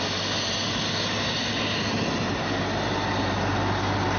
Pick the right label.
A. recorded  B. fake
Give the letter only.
A